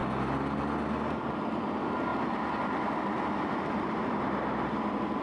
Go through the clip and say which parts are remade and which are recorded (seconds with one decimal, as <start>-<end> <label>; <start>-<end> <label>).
0.0-5.2 recorded